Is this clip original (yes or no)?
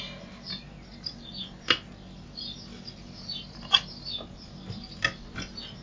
yes